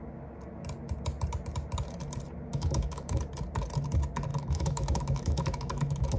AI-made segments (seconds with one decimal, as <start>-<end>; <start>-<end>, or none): 2.5-3.2; 4.3-6.2